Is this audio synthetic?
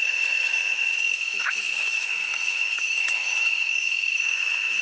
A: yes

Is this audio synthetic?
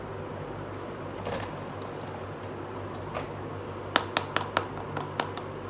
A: no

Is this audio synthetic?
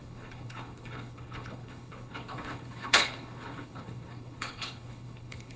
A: yes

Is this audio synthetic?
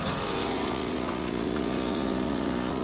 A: yes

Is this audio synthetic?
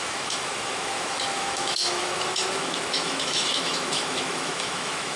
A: yes